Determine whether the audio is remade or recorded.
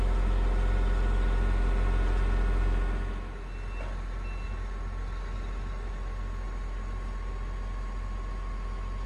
recorded